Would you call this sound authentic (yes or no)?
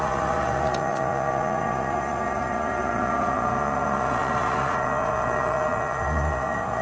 no